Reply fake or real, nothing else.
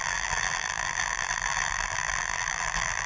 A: fake